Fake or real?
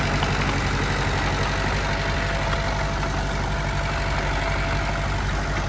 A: real